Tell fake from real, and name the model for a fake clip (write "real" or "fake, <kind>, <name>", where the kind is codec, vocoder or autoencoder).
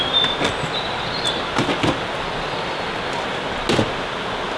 real